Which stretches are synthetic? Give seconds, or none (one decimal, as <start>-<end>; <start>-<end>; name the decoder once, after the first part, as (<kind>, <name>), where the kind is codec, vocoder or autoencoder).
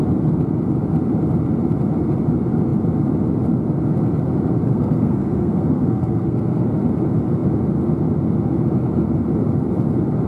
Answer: 4.7-6.7 (codec, SNAC)